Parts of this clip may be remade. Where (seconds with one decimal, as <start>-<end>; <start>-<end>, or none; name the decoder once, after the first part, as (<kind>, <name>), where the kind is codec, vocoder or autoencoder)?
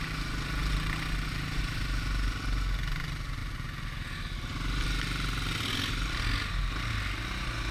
none